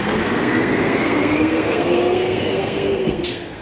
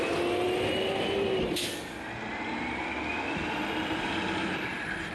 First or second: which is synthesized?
first